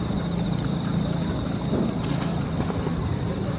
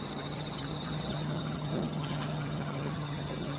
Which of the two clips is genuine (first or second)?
first